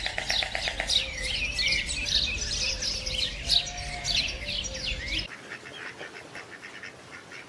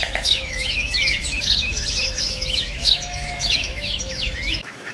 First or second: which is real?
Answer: first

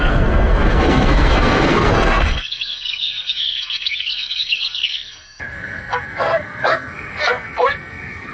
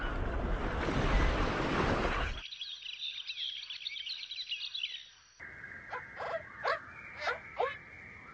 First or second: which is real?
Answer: second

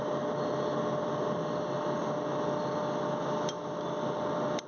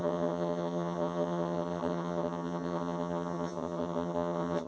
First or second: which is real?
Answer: first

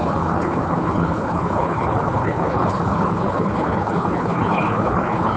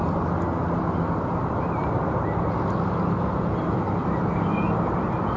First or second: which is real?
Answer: second